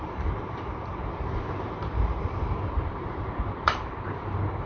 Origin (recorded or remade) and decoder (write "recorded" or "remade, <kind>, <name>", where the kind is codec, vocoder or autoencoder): remade, vocoder, BigVGAN v2